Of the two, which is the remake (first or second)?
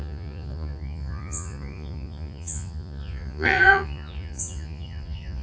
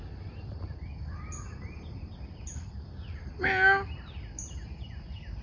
first